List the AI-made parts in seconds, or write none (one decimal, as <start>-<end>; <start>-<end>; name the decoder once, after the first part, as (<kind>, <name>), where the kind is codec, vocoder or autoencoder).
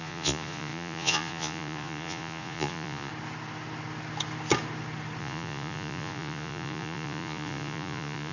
0.0-3.1 (vocoder, Vocos); 5.2-8.3